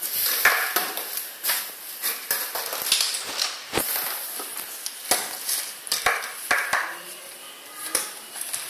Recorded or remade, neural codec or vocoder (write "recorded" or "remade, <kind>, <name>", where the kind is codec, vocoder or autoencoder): recorded